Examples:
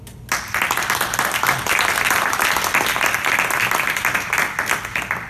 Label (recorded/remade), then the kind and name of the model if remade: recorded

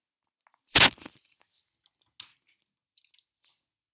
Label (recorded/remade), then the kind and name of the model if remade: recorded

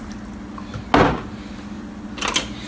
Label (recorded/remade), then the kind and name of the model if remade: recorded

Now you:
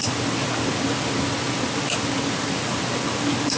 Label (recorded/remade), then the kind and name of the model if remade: recorded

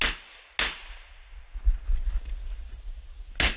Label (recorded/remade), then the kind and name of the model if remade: recorded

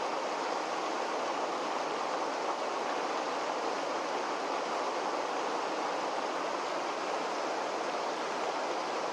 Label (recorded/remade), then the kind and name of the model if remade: recorded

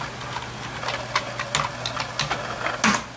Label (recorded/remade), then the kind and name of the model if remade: recorded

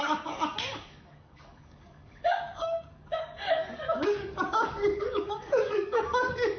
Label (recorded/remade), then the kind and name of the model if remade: remade, codec, DAC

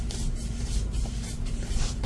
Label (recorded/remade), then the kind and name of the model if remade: remade, vocoder, BigVGAN v2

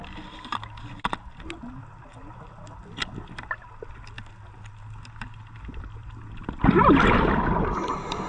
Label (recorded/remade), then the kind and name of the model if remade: recorded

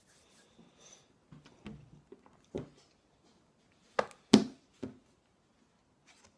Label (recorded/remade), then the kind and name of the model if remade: recorded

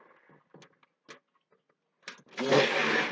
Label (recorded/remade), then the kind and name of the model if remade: recorded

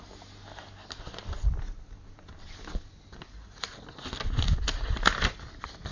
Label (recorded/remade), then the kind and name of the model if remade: recorded